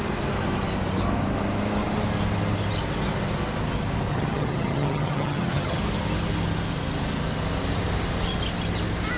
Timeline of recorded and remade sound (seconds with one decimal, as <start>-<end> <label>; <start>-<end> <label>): 0.0-4.1 recorded; 4.1-5.8 remade; 5.8-9.2 recorded

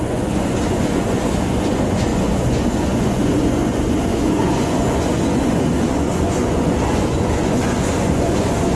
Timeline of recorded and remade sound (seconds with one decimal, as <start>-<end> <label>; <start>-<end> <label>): 0.0-8.8 remade